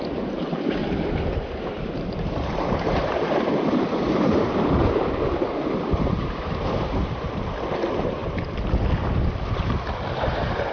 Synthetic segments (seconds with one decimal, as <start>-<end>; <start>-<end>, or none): 0.0-0.8; 1.3-8.2; 10.0-10.7